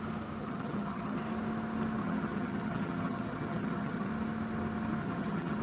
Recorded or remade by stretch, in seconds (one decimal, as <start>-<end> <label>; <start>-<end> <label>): 0.0-0.4 recorded; 0.4-1.2 remade; 1.2-2.0 recorded; 2.0-4.1 remade; 4.1-5.0 recorded; 5.0-5.6 remade

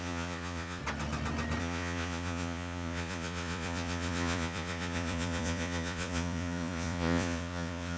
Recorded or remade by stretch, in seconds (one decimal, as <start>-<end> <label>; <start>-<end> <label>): 0.0-0.8 remade; 0.8-1.6 recorded; 1.6-8.0 remade